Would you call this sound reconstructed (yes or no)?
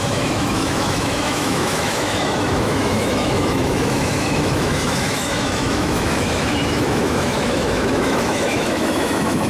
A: yes